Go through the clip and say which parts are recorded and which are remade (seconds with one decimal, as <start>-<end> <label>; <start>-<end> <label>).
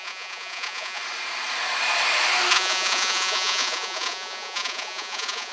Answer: 0.0-1.0 remade; 1.0-2.5 recorded; 2.5-5.5 remade